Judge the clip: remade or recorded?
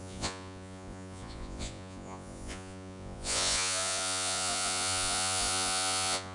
remade